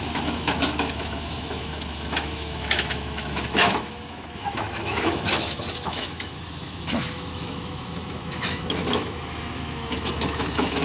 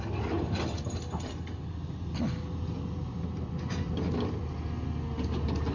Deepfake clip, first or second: first